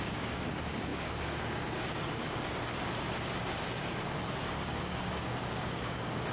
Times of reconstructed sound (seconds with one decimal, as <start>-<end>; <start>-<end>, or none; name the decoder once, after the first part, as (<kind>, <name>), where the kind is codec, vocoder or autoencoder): 0.0-2.2 (codec, DAC); 4.4-6.3